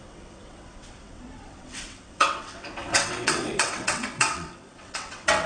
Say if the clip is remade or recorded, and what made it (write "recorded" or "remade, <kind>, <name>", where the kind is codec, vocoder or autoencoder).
remade, vocoder, WaveNeXt